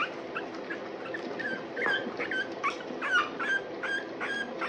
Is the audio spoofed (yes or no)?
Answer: no